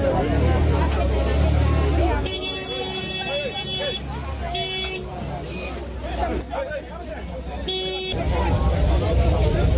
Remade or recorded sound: recorded